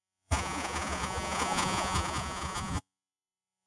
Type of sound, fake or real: fake